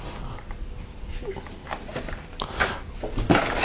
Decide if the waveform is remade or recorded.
recorded